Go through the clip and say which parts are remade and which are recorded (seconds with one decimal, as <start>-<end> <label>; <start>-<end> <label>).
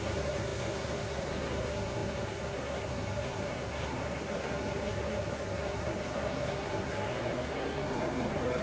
0.0-8.6 remade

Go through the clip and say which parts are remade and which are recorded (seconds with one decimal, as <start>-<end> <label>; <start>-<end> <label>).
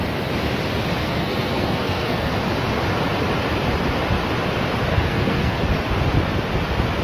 0.0-1.0 recorded; 1.0-2.3 remade; 2.3-4.9 recorded; 4.9-5.8 remade; 5.8-7.0 recorded